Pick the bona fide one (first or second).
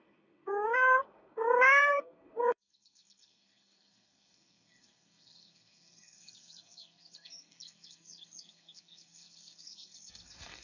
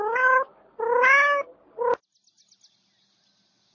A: second